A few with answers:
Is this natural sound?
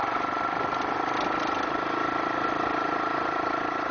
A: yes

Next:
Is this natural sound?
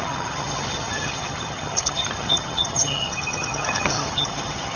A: no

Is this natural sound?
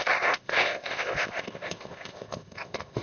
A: no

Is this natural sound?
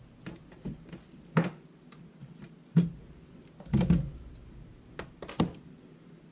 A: yes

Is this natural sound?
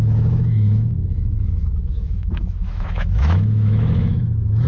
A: no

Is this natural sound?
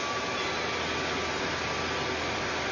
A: yes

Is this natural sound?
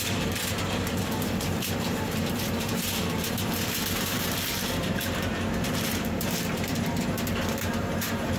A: no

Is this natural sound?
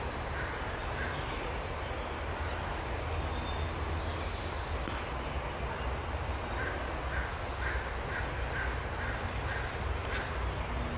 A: yes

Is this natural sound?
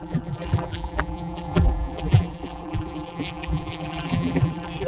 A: no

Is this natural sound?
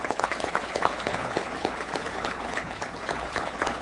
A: no